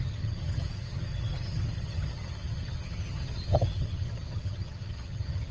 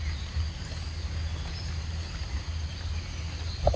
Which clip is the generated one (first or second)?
first